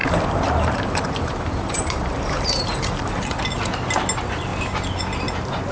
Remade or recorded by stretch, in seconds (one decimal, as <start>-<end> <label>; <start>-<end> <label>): 0.0-3.4 remade; 3.4-5.7 recorded